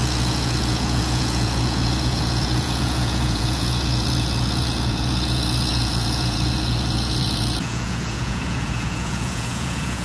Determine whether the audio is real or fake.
fake